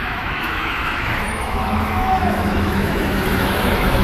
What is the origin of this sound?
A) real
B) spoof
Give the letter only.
B